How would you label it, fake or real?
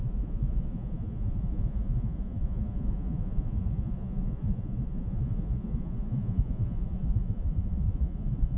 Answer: fake